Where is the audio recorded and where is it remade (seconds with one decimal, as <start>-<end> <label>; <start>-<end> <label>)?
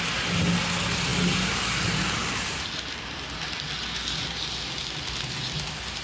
0.0-6.0 recorded